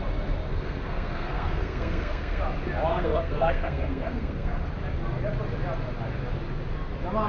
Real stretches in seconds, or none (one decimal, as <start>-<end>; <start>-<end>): 0.0-0.5; 2.4-2.9; 4.6-7.3